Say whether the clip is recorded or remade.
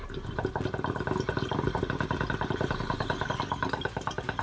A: recorded